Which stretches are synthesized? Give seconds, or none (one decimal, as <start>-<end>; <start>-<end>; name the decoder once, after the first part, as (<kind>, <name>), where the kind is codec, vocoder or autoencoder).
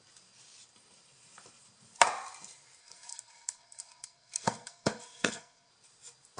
2.8-5.7 (codec, SNAC)